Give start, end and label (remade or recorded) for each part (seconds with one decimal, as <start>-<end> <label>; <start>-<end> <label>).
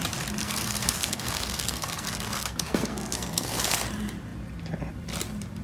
0.0-0.4 recorded; 0.4-3.8 remade; 3.8-5.6 recorded